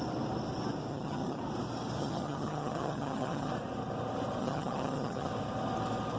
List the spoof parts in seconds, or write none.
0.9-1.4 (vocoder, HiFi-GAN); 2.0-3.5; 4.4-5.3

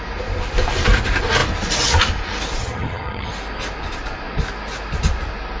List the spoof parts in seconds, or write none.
2.6-3.3 (vocoder, HiFi-GAN)

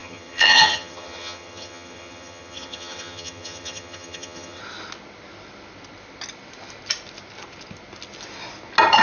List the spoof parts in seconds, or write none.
0.0-4.6 (vocoder, HiFi-GAN)

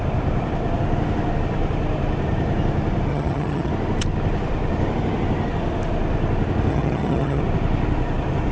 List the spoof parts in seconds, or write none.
3.1-3.7 (vocoder, HiFi-GAN); 6.7-7.4

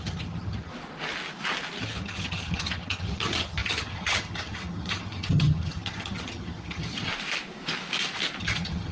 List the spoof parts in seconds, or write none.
0.0-0.7 (vocoder, HiFi-GAN); 1.8-7.1; 8.4-8.9

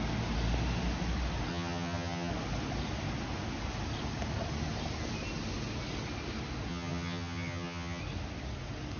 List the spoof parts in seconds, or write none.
1.5-2.3 (vocoder, HiFi-GAN); 6.7-8.0